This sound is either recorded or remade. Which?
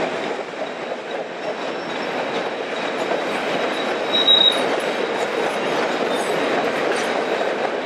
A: recorded